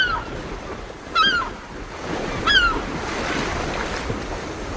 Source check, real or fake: real